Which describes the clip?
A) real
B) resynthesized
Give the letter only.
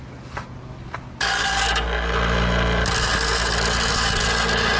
A